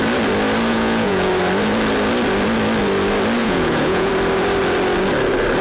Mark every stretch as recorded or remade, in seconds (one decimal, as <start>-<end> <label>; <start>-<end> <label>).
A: 0.0-0.7 recorded; 0.7-1.3 remade; 1.3-3.4 recorded; 3.4-4.1 remade; 4.1-5.6 recorded